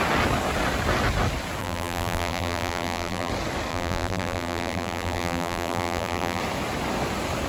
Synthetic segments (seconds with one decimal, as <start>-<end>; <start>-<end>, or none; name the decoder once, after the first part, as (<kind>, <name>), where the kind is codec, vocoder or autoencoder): 1.6-3.3 (vocoder, BigVGAN v2); 3.7-6.4